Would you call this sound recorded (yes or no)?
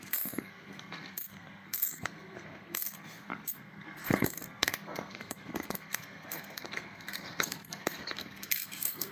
no